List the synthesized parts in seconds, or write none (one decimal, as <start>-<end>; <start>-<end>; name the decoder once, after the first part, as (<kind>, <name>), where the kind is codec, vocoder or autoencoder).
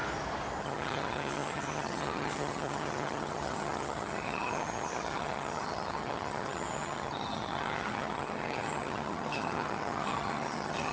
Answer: 0.6-10.9 (vocoder, HiFi-GAN)